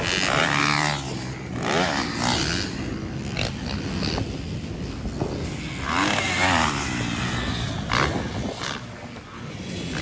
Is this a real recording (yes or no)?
yes